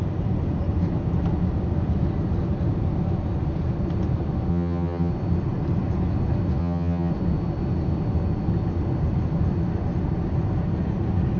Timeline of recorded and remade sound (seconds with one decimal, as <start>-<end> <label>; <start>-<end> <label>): 0.0-4.5 recorded; 4.5-5.1 remade; 5.1-6.6 recorded; 6.6-7.1 remade; 7.1-11.4 recorded